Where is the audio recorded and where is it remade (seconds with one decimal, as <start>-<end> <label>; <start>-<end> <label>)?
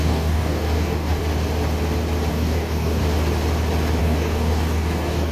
0.0-1.2 remade; 1.2-2.3 recorded; 2.3-3.0 remade; 3.0-4.0 recorded; 4.0-5.3 remade